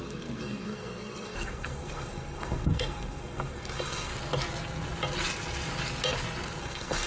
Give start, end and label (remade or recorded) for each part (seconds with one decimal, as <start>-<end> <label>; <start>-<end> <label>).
0.0-4.1 remade; 4.1-6.6 recorded; 6.6-7.1 remade